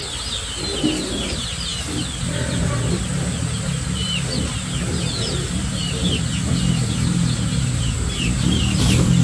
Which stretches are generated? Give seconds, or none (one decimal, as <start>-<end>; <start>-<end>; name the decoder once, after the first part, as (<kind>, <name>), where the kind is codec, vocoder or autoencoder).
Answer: none